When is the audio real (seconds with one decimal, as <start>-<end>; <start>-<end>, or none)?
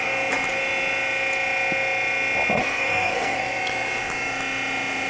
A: 0.0-2.6; 3.6-5.1